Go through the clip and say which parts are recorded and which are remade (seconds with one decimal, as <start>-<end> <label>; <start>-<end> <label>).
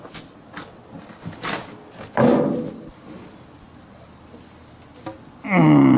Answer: 0.0-6.0 recorded